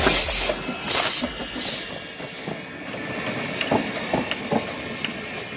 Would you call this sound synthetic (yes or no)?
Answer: no